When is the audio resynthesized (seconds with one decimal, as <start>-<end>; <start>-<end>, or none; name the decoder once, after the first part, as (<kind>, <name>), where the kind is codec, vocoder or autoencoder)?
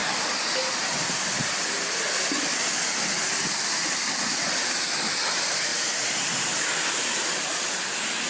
none